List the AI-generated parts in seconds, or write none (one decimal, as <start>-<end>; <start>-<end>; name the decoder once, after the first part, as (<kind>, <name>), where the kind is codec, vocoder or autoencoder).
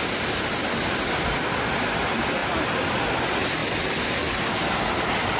none